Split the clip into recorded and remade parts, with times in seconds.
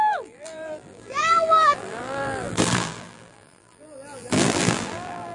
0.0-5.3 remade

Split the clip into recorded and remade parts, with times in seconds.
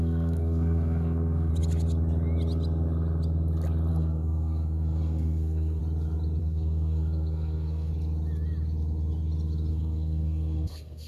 0.0-1.5 remade; 1.5-3.9 recorded; 3.9-5.8 remade; 5.8-6.4 recorded; 6.4-7.9 remade; 7.9-9.7 recorded; 9.7-11.1 remade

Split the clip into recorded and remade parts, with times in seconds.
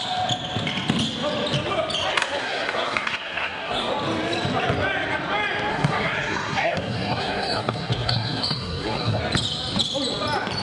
0.0-2.1 recorded; 2.1-3.9 remade; 3.9-5.7 recorded; 5.7-9.2 remade; 9.2-10.6 recorded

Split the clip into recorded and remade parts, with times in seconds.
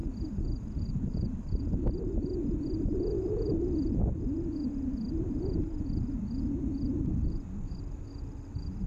0.0-8.9 recorded